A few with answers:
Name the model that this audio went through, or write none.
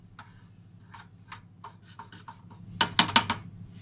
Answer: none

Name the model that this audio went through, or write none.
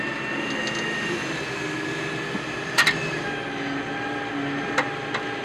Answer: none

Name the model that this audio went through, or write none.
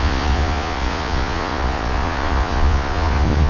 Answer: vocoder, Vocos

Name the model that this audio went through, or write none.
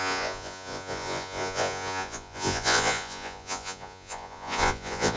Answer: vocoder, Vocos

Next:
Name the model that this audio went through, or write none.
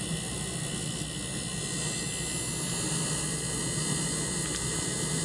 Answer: none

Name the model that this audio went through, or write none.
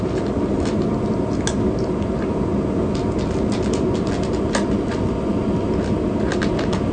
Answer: none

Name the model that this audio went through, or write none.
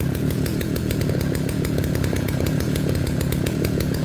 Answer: vocoder, Vocos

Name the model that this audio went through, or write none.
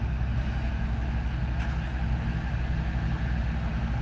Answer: none